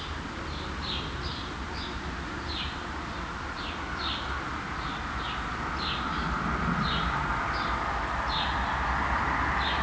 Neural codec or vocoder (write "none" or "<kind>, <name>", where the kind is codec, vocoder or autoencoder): none